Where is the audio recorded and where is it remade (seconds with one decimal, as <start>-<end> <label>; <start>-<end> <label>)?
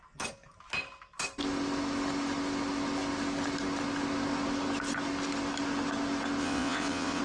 0.0-6.4 recorded; 6.4-7.2 remade